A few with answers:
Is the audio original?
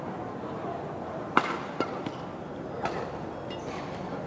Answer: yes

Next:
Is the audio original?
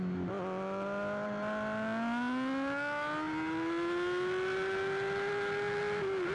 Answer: yes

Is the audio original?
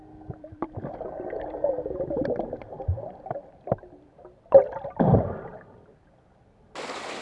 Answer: no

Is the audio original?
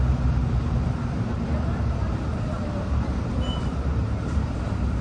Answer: no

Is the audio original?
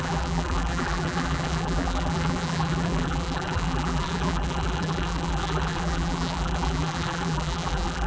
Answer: no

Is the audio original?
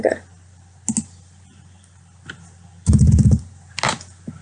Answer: yes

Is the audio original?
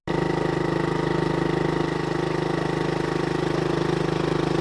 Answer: yes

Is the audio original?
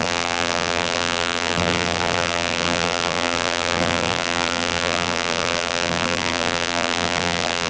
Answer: no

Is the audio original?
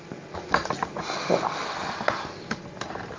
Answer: yes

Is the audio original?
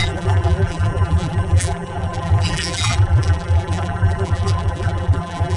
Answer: no